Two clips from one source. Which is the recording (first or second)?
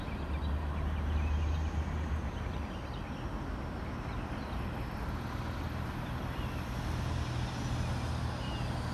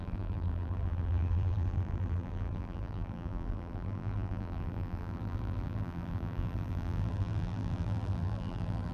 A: first